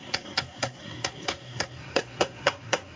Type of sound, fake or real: fake